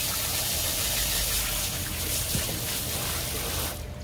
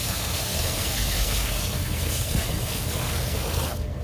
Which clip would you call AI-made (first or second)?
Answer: second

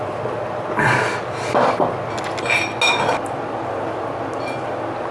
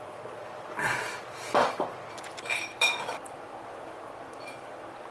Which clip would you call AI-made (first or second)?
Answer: second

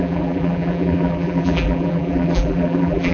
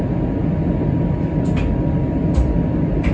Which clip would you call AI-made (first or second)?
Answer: first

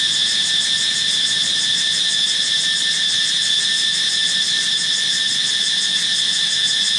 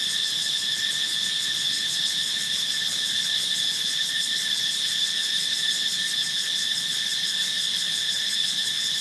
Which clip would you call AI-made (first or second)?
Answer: second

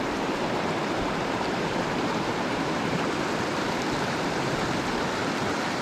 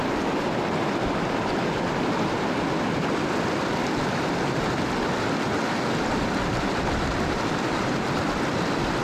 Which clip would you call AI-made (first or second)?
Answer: first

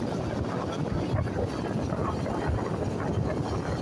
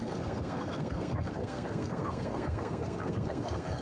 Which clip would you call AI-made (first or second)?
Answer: second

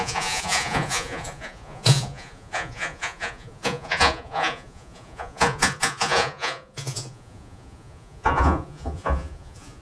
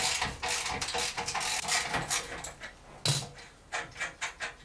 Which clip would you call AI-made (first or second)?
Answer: first